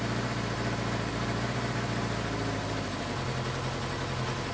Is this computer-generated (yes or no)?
no